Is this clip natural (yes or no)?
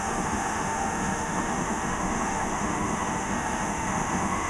no